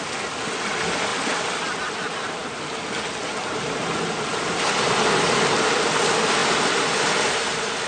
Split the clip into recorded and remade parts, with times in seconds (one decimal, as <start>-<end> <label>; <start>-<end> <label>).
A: 0.0-7.9 recorded